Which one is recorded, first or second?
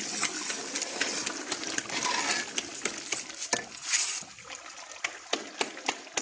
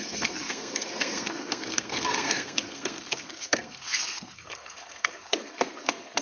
first